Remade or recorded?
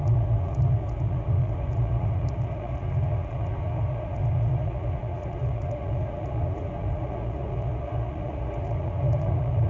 remade